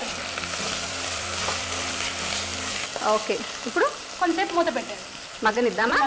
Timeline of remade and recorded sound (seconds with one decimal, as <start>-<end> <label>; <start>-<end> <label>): 0.0-2.5 remade; 2.5-5.5 recorded; 5.5-6.1 remade